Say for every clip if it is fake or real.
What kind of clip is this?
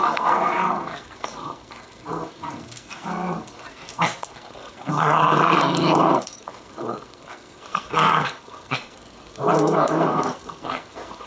fake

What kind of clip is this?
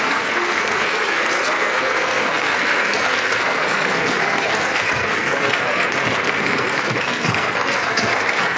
fake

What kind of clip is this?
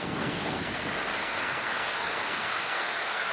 fake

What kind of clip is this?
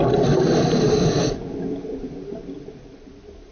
real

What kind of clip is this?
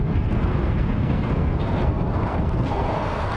fake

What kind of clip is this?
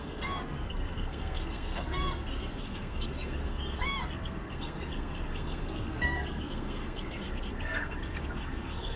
fake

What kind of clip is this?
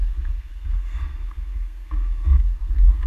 fake